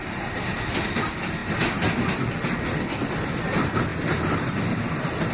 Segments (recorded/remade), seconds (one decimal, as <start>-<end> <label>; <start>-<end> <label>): 0.0-1.4 remade; 1.4-2.9 recorded; 2.9-3.9 remade; 3.9-4.8 recorded; 4.8-5.3 remade